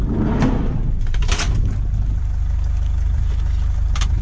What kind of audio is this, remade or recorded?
remade